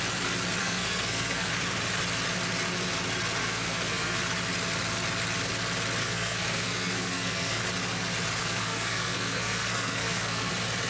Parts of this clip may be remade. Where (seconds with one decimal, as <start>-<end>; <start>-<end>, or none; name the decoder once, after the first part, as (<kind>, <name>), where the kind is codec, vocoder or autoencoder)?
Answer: 0.6-1.5 (codec, SNAC); 3.4-4.2; 6.0-7.6; 8.4-10.5